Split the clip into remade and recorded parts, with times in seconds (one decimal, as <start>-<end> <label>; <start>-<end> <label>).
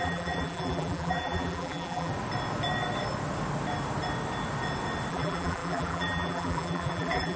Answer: 0.0-2.1 remade; 2.1-5.1 recorded; 5.1-7.4 remade